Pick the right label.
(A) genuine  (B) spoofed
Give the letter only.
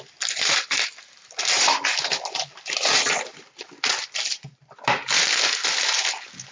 A